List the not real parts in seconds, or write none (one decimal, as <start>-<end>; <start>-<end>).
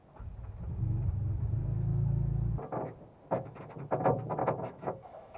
4.4-5.4